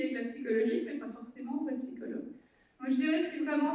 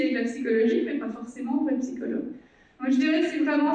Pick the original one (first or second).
second